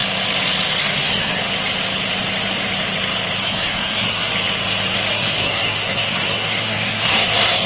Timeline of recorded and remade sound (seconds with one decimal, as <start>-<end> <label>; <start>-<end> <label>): 0.0-0.8 recorded; 0.8-1.4 remade; 1.4-3.4 recorded; 3.4-4.3 remade; 4.3-5.1 recorded; 5.1-7.7 remade